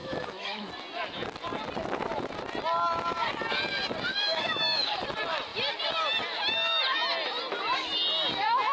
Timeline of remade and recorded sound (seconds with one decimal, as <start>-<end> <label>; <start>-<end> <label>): 0.0-0.7 remade; 0.7-4.1 recorded; 4.1-5.0 remade; 5.0-8.7 recorded